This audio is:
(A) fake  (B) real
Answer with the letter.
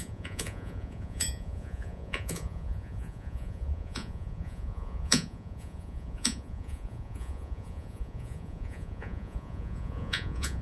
A